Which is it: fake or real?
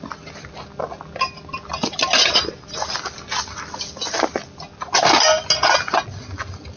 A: real